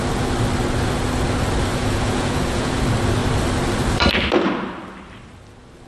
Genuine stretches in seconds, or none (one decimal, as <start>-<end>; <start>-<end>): 0.0-1.7; 2.8-5.9